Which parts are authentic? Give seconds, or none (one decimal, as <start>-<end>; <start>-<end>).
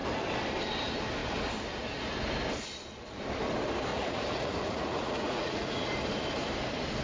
0.0-3.9; 5.9-7.0